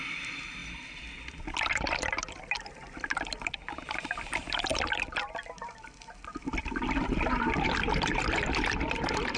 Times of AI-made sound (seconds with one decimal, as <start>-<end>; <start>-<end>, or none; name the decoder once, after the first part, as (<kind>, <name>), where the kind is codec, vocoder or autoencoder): none